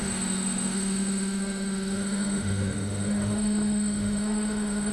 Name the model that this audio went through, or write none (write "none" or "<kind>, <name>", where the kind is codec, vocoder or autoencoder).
autoencoder, DAC-VAE